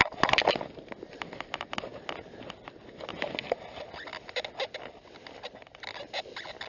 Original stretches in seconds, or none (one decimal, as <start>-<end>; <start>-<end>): 0.0-6.7